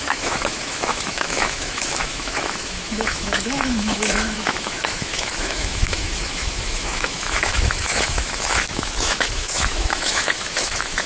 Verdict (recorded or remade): remade